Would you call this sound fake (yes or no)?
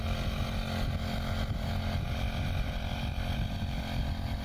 no